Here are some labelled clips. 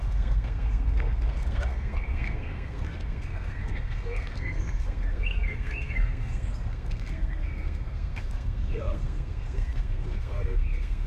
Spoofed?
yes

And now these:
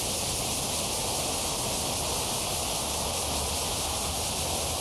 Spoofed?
no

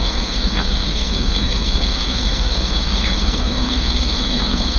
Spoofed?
yes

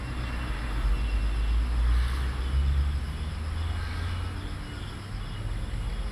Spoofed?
no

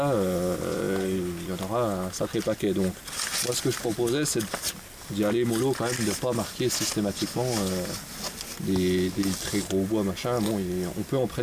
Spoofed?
no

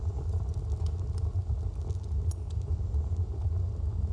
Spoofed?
no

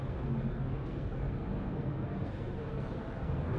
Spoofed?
yes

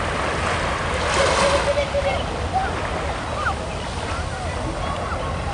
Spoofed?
no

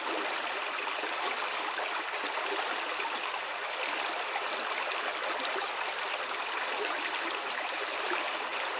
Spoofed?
no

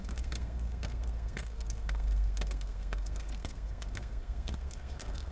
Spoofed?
yes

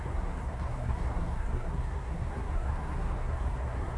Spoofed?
yes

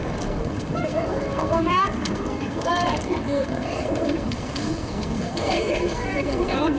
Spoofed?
yes